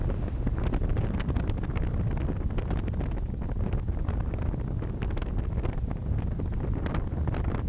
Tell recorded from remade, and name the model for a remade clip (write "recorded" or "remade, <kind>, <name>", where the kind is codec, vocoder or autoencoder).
recorded